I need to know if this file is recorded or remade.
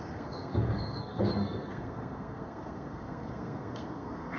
remade